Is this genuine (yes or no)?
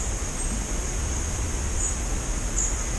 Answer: yes